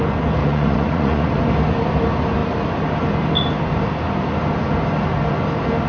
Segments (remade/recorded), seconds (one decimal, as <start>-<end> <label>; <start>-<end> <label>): 0.0-0.4 recorded; 0.4-1.4 remade; 1.4-5.9 recorded